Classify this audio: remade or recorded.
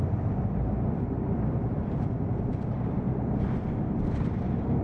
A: remade